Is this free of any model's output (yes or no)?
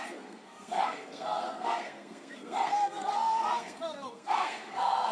no